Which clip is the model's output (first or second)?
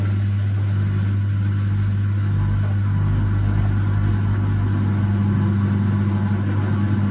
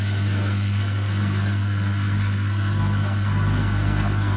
second